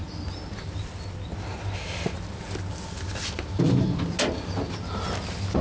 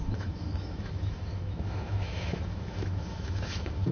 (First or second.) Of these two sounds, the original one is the first